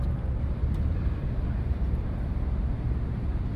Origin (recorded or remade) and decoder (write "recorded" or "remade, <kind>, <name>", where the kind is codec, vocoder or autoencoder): remade, vocoder, BigVGAN v2